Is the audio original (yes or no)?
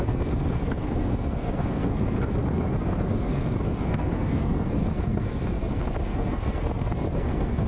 no